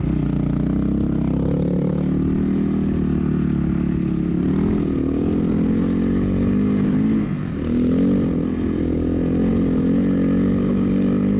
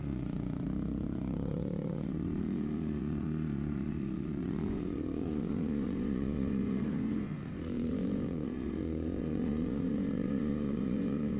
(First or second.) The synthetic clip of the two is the second